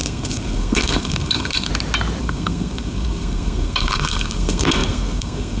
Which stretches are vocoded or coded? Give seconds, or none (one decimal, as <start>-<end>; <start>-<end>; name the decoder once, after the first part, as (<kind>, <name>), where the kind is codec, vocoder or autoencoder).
0.0-1.7 (codec, SNAC); 2.2-5.6